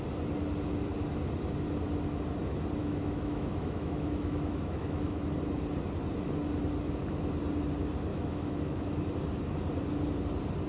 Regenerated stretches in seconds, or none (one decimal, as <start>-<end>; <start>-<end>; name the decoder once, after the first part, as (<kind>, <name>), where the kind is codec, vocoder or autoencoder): 2.8-5.2 (autoencoder, DAC-VAE); 8.1-8.9